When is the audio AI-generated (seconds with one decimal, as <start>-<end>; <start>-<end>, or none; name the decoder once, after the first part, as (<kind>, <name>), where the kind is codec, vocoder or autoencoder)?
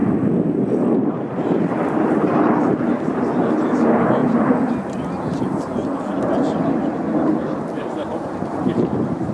1.1-4.2 (vocoder, BigVGAN v2); 5.3-5.8; 7.8-9.3